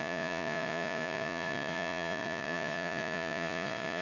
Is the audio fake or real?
fake